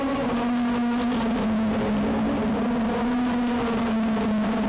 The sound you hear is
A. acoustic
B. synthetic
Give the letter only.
A